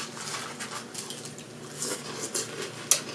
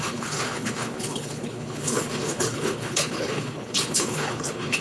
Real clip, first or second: first